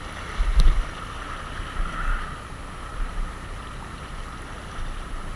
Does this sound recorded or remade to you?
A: recorded